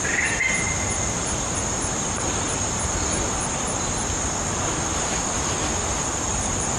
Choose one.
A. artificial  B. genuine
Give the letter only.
B